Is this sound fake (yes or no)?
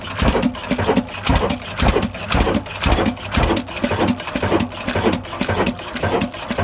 no